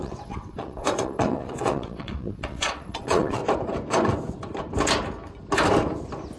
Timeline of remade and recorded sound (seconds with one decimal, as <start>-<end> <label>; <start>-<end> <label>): 0.0-3.4 remade; 3.4-6.4 recorded